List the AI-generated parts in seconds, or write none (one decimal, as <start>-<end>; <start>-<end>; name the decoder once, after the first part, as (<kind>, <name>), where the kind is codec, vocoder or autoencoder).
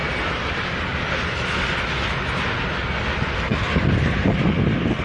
0.0-0.5 (vocoder, BigVGAN v2)